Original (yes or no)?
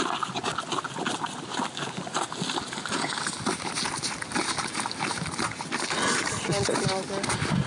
yes